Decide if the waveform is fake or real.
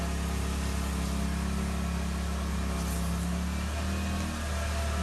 real